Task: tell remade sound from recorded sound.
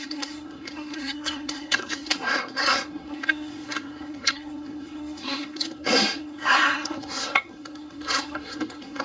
remade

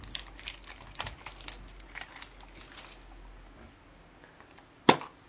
recorded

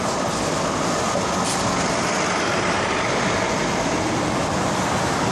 recorded